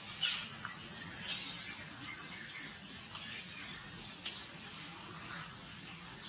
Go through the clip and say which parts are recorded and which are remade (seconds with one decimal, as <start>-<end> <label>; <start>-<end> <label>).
0.0-1.3 remade; 1.3-1.8 recorded; 1.8-6.3 remade